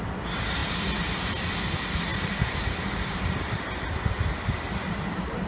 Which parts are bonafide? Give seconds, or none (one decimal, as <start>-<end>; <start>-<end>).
0.0-0.6; 1.3-2.1